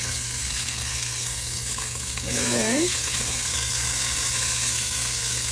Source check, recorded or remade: remade